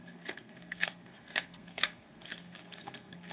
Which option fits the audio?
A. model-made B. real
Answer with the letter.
A